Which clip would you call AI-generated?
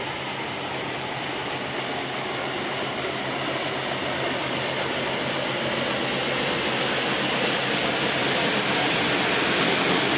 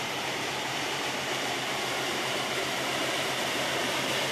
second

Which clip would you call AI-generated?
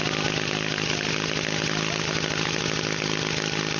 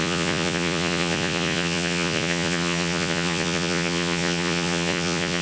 second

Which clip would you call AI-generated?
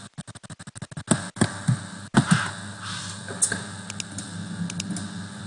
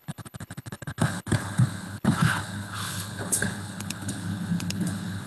second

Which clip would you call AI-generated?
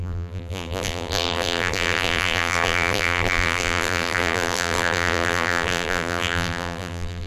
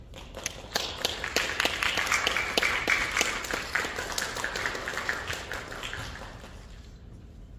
first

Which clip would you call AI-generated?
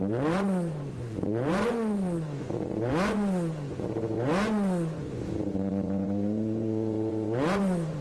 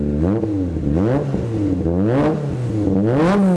first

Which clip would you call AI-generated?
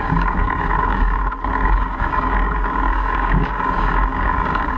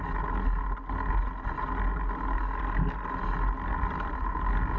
first